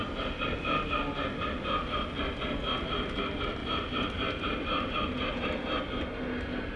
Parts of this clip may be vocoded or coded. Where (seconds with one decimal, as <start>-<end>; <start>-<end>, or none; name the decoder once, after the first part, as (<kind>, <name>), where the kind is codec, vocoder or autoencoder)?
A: 3.6-5.8 (vocoder, BigVGAN v2)